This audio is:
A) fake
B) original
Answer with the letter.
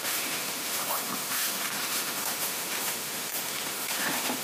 A